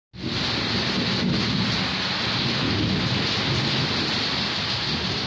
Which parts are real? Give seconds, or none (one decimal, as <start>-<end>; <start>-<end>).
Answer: 0.0-5.3